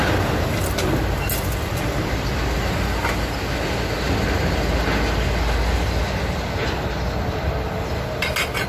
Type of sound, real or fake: real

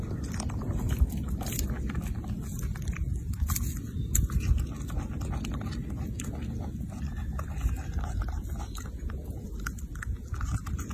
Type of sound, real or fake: real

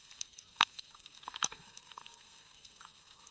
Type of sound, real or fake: fake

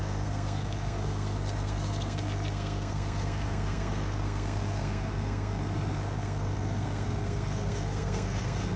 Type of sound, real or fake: fake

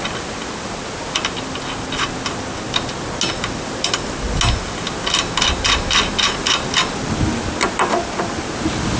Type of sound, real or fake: real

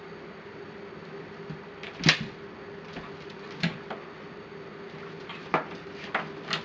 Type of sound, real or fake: real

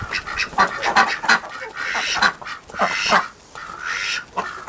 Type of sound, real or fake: real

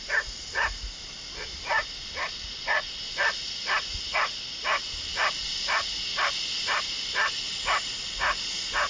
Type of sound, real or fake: real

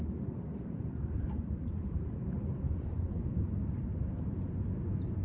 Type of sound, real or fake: real